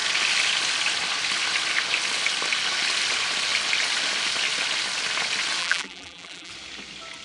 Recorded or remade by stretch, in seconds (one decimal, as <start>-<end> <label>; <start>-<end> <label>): 0.0-5.6 recorded; 5.6-6.5 remade; 6.5-7.2 recorded